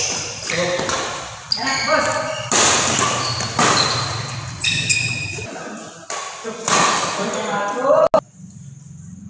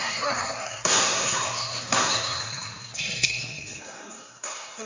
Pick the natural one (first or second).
first